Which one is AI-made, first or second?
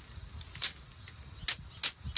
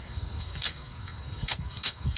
second